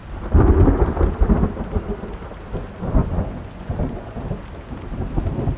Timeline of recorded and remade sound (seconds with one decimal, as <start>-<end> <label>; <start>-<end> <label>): 0.0-3.0 recorded; 3.0-4.2 remade; 4.2-5.6 recorded